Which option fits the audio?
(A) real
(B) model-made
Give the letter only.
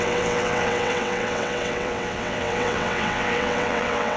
B